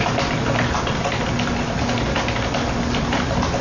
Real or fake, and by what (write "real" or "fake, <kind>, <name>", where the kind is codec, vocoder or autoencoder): real